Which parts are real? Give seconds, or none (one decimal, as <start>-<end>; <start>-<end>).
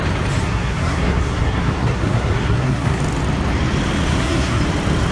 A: 0.0-0.4; 3.0-4.1; 4.6-5.1